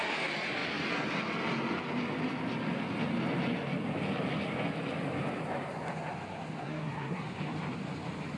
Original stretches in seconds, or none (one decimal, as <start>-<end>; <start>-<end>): 0.0-6.6; 7.2-8.4